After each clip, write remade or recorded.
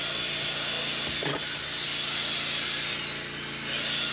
recorded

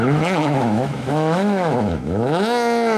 remade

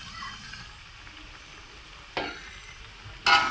recorded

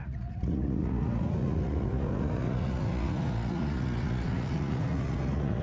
remade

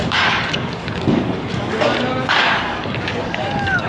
remade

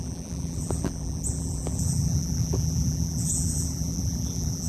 remade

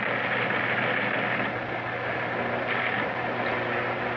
recorded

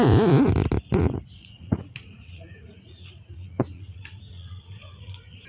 remade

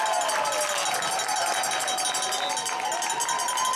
recorded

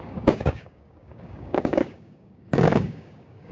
remade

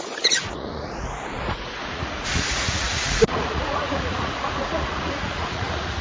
remade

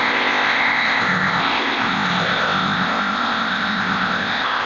remade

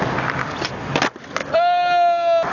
recorded